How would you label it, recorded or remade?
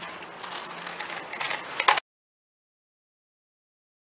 recorded